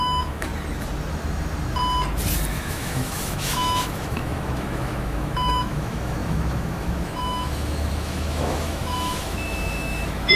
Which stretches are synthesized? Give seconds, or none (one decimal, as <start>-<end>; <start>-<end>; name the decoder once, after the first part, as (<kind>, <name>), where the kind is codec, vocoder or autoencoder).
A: 0.0-0.5 (autoencoder, DAC-VAE); 2.5-10.4